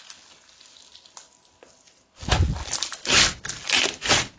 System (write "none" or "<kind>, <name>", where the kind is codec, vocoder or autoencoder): none